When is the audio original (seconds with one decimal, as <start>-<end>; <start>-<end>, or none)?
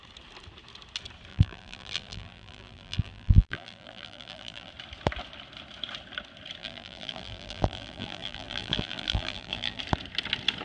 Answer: 0.0-1.3; 4.7-6.6; 9.8-10.6